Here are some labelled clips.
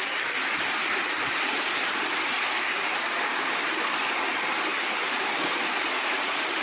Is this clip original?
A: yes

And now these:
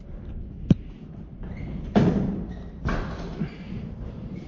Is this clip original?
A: yes